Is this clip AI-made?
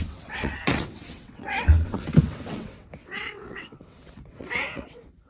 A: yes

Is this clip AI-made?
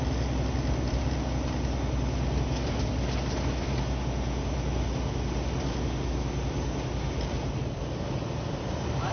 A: no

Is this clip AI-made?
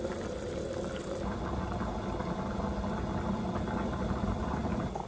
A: no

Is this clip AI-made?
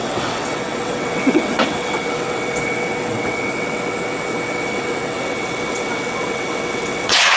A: yes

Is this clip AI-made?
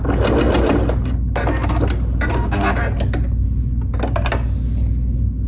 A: no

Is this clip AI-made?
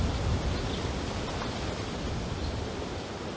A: no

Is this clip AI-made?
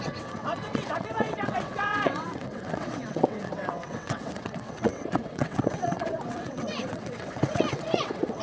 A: yes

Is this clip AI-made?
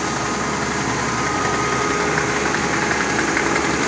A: no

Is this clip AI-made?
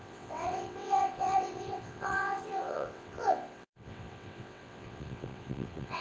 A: yes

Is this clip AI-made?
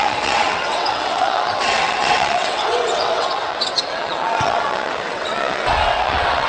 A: yes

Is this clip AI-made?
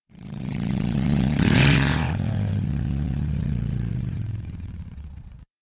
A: yes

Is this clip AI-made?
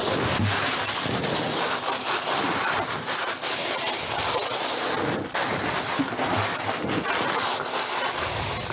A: no